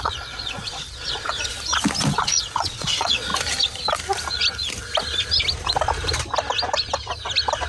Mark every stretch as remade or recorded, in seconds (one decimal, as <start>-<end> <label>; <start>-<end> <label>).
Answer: 0.0-1.5 remade; 1.5-2.2 recorded; 2.2-3.3 remade; 3.3-7.7 recorded